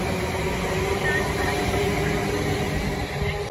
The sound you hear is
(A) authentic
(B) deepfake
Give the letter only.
A